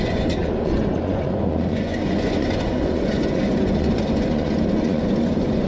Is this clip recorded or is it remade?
remade